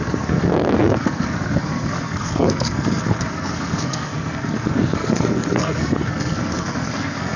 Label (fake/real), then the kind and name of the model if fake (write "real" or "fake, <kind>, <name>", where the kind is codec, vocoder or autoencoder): fake, codec, SNAC